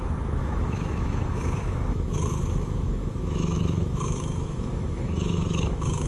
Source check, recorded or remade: remade